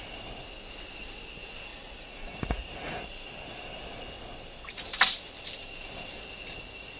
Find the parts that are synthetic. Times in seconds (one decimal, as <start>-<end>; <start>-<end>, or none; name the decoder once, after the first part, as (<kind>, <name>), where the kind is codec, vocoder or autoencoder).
1.7-3.0 (vocoder, Vocos)